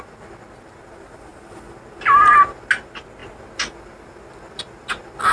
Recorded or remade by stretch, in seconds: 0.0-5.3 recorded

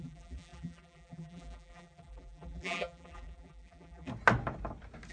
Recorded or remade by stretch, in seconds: 0.0-4.1 remade; 4.1-5.1 recorded